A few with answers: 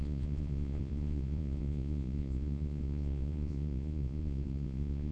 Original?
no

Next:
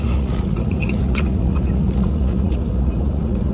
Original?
no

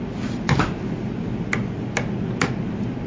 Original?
yes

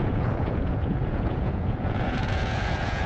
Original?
no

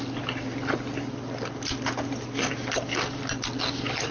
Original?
yes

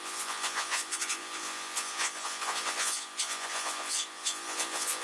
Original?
no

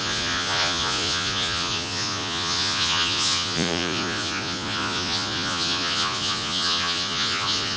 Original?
no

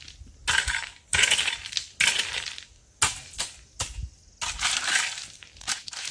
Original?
yes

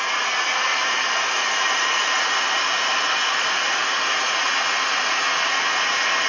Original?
no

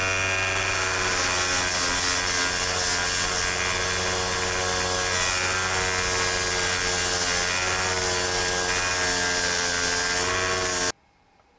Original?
yes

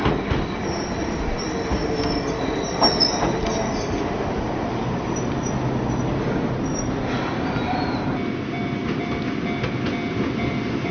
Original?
yes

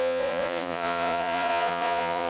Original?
no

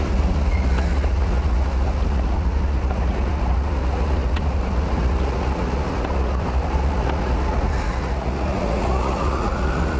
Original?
no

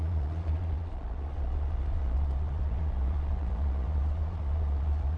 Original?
no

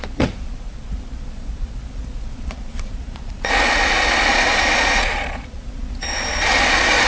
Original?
no